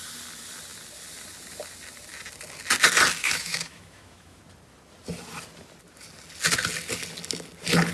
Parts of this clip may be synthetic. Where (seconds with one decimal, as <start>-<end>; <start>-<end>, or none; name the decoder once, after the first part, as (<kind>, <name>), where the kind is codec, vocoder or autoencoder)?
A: 3.2-4.4 (autoencoder, DAC-VAE)